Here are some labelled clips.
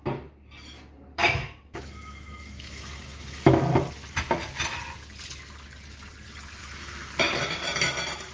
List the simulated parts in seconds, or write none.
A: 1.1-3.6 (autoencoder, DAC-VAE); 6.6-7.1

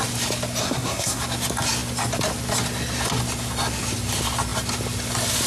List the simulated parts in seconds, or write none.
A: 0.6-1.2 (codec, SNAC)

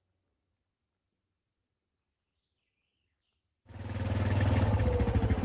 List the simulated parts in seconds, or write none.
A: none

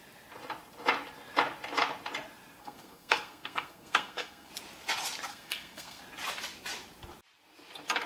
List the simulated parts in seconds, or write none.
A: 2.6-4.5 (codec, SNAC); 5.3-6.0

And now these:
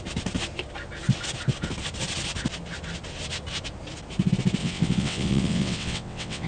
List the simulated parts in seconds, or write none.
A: 4.6-6.5 (vocoder, WaveNeXt)